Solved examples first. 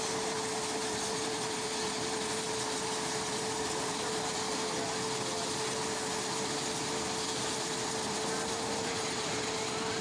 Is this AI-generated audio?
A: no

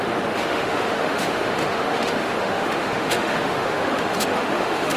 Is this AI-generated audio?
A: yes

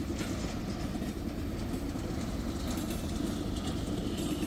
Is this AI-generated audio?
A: no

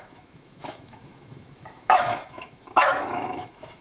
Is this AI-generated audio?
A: yes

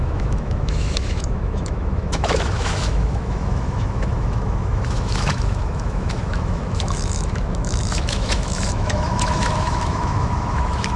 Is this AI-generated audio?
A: yes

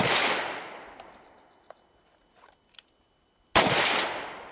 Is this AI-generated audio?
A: no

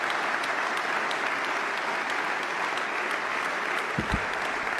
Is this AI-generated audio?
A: no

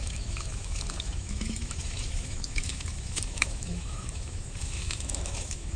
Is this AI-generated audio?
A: yes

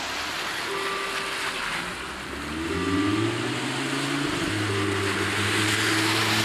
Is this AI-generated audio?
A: no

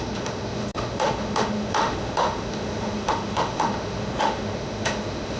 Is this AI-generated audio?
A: yes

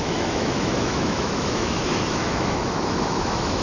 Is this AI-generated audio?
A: yes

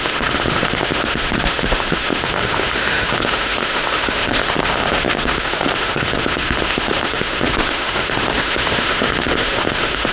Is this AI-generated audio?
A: yes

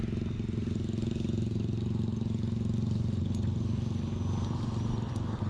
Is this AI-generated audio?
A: no